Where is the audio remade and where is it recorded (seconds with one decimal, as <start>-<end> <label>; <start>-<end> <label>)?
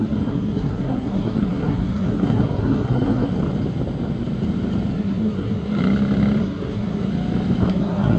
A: 0.0-3.3 remade; 3.3-4.9 recorded; 4.9-5.8 remade; 5.8-6.4 recorded; 6.4-7.1 remade; 7.1-7.7 recorded; 7.7-8.2 remade